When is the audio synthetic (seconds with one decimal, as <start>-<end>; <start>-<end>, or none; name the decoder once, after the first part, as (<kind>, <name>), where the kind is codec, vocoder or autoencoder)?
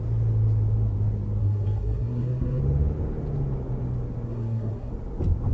1.4-2.6 (codec, SNAC); 4.3-4.9